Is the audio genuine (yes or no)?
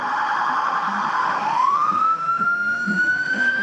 no